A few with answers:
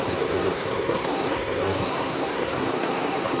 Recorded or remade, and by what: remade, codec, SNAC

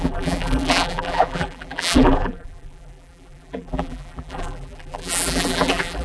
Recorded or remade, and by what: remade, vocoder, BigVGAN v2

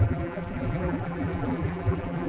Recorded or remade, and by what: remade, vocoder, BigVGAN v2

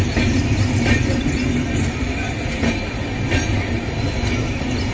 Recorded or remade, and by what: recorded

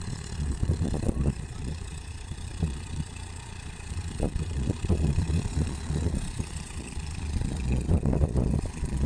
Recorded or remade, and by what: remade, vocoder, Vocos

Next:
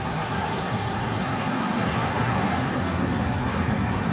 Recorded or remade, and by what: remade, codec, SNAC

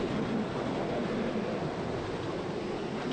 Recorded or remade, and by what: recorded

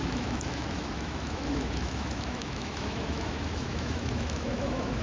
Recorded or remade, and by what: remade, autoencoder, DAC-VAE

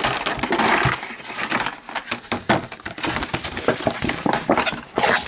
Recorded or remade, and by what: recorded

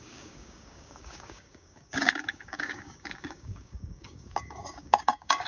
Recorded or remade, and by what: remade, codec, DAC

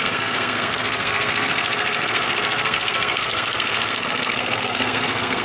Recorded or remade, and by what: remade, codec, SNAC